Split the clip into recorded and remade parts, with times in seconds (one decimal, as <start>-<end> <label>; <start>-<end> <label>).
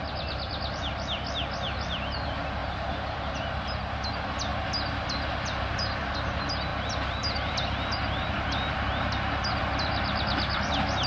0.0-11.1 recorded